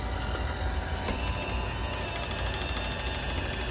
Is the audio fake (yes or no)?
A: no